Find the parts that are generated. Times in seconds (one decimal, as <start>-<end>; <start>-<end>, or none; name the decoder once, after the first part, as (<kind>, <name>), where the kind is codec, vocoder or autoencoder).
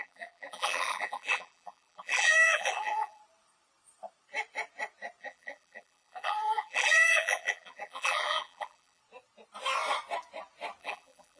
0.0-3.2 (vocoder, BigVGAN v2); 5.2-9.0; 10.8-11.4